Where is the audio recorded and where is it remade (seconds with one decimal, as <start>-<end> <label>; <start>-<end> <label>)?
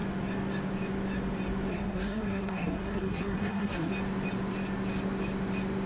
0.0-1.7 recorded; 1.7-3.9 remade; 3.9-5.9 recorded